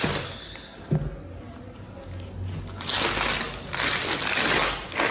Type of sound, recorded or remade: recorded